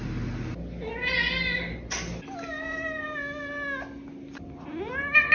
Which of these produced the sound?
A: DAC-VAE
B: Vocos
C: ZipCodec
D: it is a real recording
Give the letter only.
D